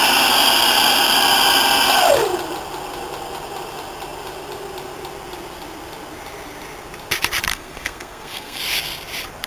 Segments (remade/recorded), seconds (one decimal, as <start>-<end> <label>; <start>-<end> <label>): 0.0-7.5 recorded; 7.5-8.6 remade; 8.6-9.5 recorded

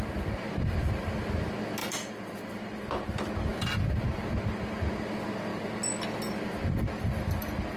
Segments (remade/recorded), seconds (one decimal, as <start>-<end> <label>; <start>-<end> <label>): 0.0-1.8 recorded; 1.8-2.5 remade; 2.5-3.5 recorded; 3.5-4.4 remade; 4.4-7.8 recorded

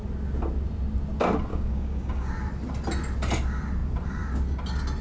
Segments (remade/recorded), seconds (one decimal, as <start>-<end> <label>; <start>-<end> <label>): 0.0-1.5 recorded; 1.5-2.3 remade; 2.3-5.0 recorded

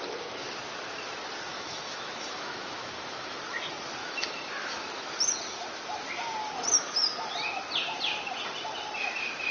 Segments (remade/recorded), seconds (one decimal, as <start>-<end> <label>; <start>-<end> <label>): 0.0-1.5 recorded; 1.5-3.4 remade; 3.4-4.0 recorded; 4.0-5.1 remade; 5.1-9.5 recorded

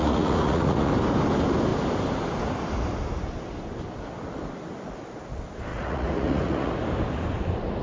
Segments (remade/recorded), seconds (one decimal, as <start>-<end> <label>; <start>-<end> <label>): 0.0-0.9 remade; 0.9-5.7 recorded; 5.7-6.7 remade; 6.7-7.8 recorded